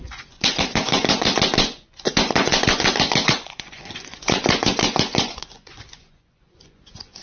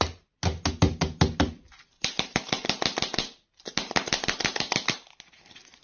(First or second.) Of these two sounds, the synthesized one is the first